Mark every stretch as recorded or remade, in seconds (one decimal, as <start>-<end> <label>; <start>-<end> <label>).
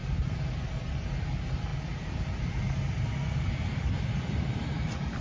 0.0-5.2 remade